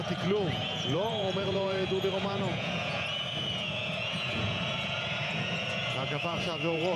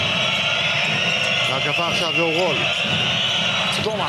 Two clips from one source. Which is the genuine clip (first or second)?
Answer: second